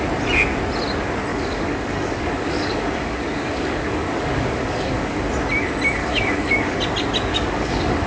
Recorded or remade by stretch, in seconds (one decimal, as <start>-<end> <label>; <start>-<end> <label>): 0.0-1.3 recorded; 1.3-5.3 remade; 5.3-6.0 recorded; 6.0-6.8 remade; 6.8-7.3 recorded; 7.3-8.1 remade